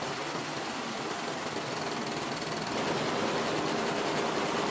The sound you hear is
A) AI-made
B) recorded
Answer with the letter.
B